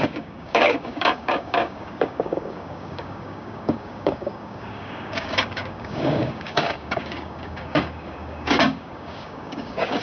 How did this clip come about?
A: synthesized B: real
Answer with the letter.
A